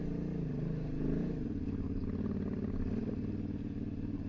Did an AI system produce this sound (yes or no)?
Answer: no